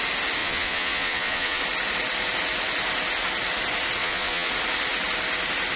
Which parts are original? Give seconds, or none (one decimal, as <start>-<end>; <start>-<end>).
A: 0.0-0.4; 1.6-4.0; 4.5-5.8